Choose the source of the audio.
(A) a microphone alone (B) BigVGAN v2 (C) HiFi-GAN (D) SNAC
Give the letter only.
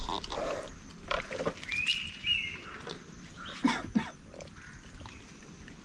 A